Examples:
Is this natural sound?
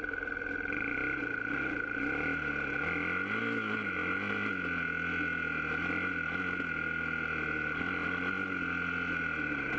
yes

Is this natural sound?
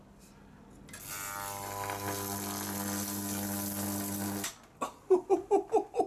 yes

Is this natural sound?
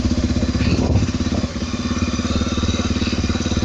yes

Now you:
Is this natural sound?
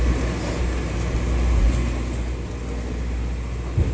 yes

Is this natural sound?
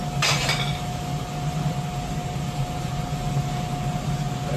yes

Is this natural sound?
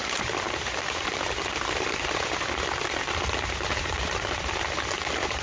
yes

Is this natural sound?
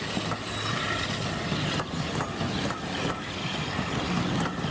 yes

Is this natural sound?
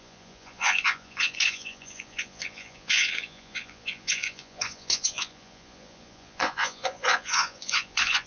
no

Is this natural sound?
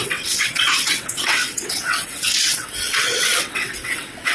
no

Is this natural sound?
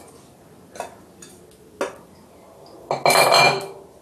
yes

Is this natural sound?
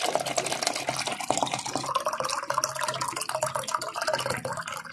yes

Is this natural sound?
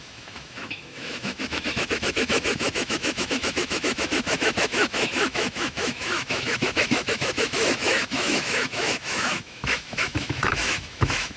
no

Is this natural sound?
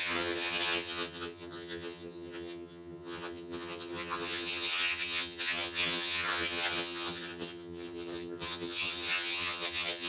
no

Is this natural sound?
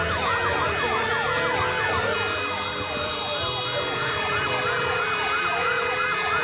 yes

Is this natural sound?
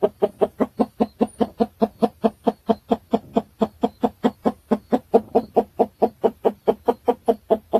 no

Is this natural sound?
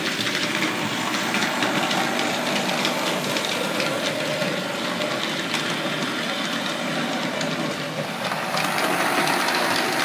yes